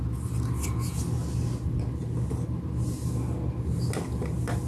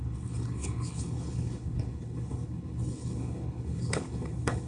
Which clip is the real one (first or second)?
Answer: first